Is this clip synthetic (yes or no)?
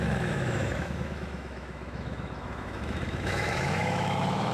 yes